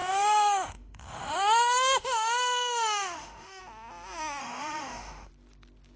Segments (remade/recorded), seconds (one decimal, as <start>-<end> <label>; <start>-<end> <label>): 0.0-3.6 remade; 3.6-4.4 recorded; 4.4-5.3 remade; 5.3-6.0 recorded